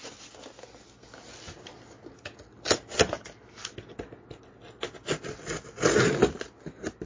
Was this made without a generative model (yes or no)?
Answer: yes